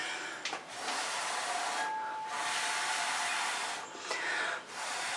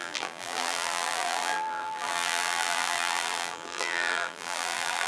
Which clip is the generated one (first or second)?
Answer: second